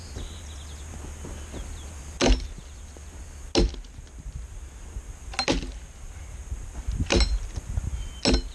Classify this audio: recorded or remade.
recorded